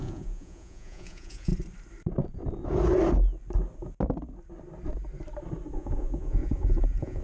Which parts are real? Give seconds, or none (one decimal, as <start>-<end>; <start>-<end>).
1.5-5.7